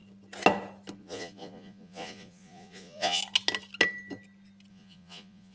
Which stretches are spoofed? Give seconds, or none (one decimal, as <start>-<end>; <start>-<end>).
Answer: 1.0-3.2; 4.7-5.5